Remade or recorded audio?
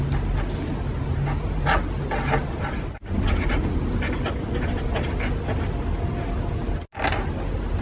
recorded